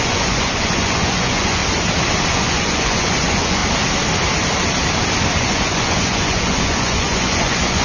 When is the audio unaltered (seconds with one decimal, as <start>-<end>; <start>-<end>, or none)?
1.6-2.3; 3.6-5.4